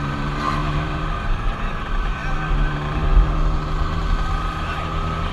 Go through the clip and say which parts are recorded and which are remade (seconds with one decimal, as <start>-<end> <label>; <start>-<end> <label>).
0.0-5.3 remade